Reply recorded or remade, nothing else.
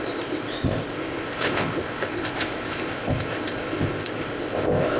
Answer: remade